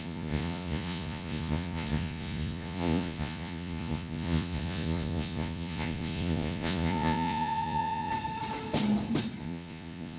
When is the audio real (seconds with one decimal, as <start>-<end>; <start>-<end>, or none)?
8.1-9.4